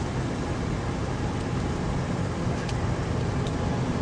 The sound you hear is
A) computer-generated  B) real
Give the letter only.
B